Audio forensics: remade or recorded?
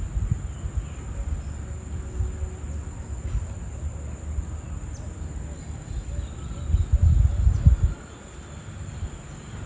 recorded